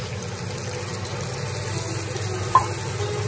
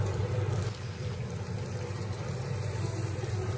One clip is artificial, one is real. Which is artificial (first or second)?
second